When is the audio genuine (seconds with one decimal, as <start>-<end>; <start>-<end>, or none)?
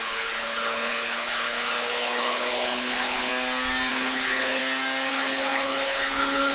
3.3-3.9; 4.6-5.1